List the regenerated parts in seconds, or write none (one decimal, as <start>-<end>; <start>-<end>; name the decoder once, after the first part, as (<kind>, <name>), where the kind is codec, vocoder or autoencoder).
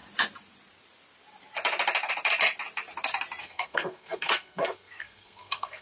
3.4-5.8 (codec, SNAC)